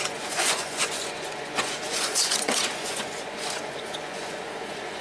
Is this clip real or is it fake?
fake